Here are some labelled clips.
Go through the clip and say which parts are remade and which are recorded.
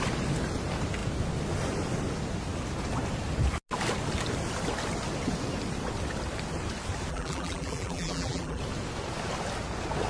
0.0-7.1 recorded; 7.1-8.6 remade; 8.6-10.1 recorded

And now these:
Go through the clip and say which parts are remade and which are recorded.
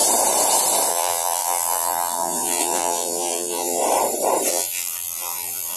0.0-0.9 recorded; 0.9-3.8 remade; 3.8-4.5 recorded; 4.5-5.8 remade